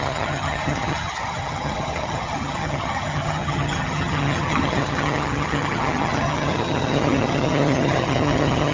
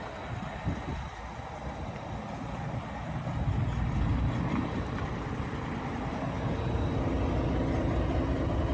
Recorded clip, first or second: second